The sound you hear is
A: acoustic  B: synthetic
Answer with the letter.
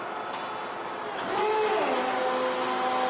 A